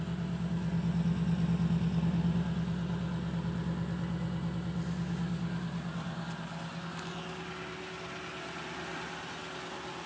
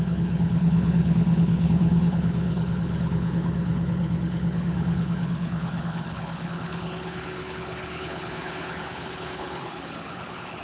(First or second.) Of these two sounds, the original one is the first